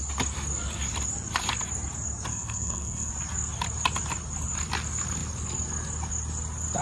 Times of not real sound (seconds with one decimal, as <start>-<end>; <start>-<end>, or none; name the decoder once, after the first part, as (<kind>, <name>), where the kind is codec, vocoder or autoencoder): 2.3-3.1 (codec, SNAC)